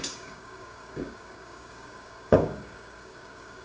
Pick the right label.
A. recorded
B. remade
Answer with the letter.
B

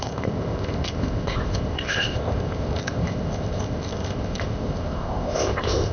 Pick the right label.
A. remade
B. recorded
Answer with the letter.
A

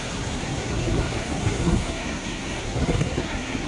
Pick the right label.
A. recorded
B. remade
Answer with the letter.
B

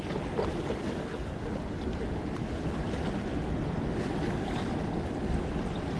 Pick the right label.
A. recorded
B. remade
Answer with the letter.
A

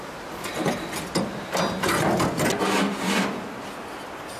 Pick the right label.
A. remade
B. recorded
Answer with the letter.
B